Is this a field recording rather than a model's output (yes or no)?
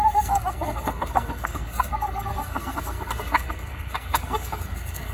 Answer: no